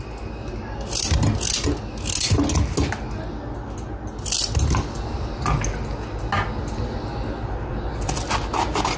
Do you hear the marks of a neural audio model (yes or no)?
no